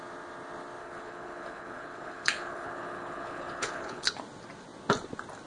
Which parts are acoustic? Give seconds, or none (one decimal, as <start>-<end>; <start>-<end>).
0.0-0.8; 4.1-5.5